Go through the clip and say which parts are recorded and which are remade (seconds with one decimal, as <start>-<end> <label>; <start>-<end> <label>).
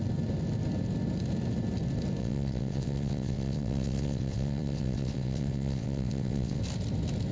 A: 0.0-2.2 recorded; 2.2-6.6 remade; 6.6-7.3 recorded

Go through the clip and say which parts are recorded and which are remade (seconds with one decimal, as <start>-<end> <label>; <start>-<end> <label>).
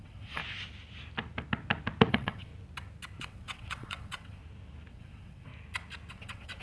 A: 0.0-0.4 remade; 0.4-2.1 recorded; 2.1-2.5 remade; 2.5-3.2 recorded; 3.2-4.4 remade; 4.4-4.9 recorded; 4.9-5.5 remade; 5.5-6.1 recorded; 6.1-6.6 remade